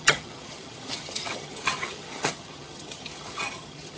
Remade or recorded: remade